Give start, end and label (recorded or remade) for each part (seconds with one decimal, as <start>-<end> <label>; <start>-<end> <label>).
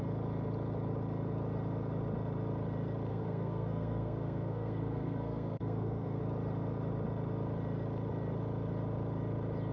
0.0-3.1 recorded; 3.1-6.2 remade; 6.2-9.7 recorded